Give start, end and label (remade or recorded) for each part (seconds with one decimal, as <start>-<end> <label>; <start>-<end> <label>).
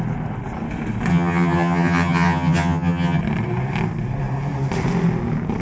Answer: 0.0-1.1 recorded; 1.1-3.2 remade; 3.2-5.6 recorded